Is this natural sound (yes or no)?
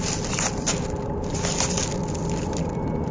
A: yes